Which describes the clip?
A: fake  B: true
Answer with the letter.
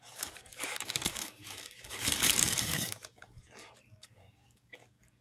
A